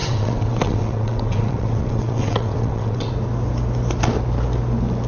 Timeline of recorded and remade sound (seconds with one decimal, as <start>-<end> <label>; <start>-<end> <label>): 0.0-3.1 remade; 3.1-5.1 recorded